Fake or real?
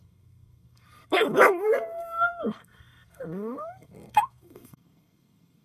fake